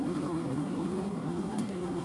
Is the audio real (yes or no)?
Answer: no